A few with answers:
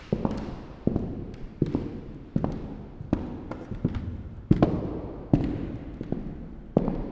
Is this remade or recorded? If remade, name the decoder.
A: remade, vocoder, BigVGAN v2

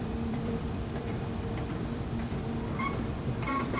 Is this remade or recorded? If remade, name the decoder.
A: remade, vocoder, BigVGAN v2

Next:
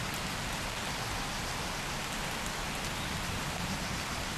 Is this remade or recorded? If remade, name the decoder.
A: recorded